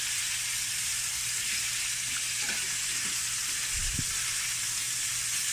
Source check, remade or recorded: recorded